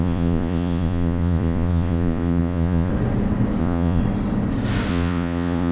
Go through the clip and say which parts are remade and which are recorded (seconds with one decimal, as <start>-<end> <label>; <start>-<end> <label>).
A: 0.0-2.9 remade; 2.9-3.6 recorded; 3.6-4.0 remade; 4.0-4.9 recorded; 4.9-5.7 remade